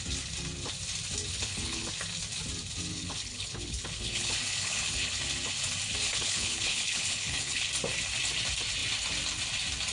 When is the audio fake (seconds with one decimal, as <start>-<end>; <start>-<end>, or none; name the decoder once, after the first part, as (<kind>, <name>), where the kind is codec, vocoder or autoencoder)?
1.3-1.9 (codec, HILCodec); 2.9-5.2; 6.1-7.7